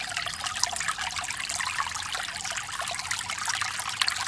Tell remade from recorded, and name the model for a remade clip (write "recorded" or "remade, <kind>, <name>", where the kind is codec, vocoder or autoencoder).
recorded